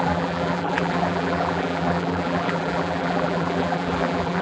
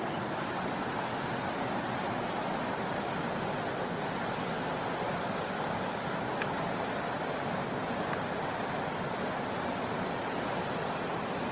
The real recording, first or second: second